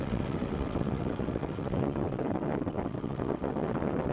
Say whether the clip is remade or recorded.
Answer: remade